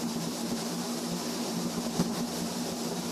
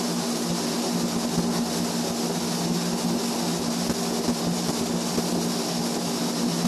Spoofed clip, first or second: first